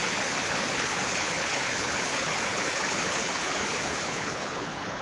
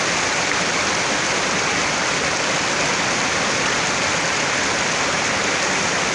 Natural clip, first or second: second